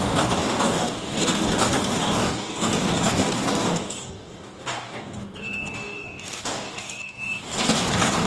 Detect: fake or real fake